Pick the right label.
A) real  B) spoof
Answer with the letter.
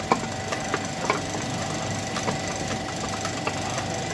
A